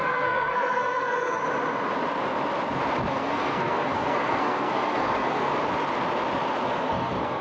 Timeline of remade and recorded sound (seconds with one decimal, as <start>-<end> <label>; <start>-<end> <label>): 0.0-1.4 remade; 1.4-3.1 recorded; 3.1-5.5 remade; 5.5-6.6 recorded; 6.6-7.4 remade